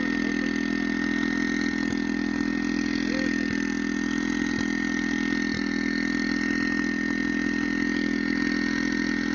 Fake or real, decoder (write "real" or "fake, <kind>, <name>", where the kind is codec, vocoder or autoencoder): real